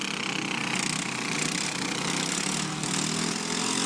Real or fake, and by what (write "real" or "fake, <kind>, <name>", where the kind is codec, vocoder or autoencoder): real